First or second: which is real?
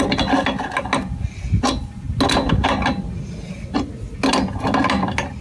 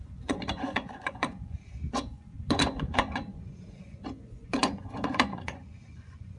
first